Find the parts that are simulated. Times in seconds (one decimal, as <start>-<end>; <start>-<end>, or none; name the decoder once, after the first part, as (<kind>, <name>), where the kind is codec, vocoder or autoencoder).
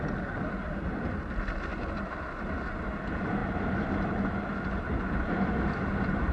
none